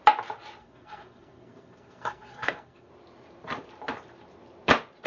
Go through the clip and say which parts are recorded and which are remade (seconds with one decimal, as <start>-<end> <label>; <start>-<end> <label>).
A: 0.0-0.6 recorded; 0.6-2.9 remade; 2.9-5.1 recorded